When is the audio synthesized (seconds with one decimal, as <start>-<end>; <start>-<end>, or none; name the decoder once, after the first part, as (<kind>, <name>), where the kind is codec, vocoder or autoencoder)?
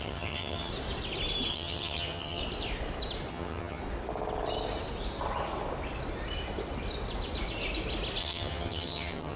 0.0-0.7 (vocoder, HiFi-GAN); 1.5-2.4; 3.3-3.8; 8.2-9.4